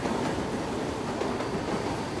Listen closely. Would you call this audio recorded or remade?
remade